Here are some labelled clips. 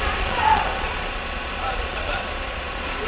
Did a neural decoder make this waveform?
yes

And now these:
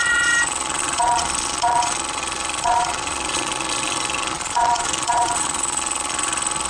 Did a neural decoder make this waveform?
yes